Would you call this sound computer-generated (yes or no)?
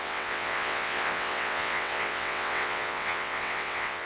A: yes